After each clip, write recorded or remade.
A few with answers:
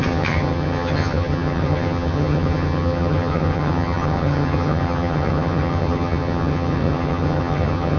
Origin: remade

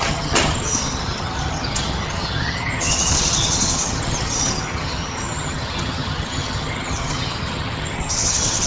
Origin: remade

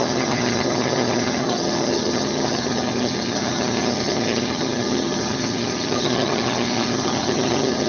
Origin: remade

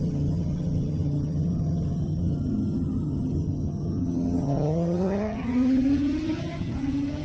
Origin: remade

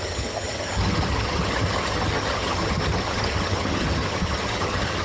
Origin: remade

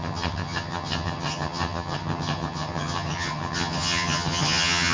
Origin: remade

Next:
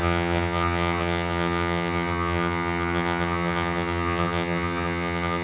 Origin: remade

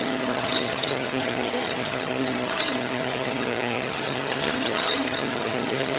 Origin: remade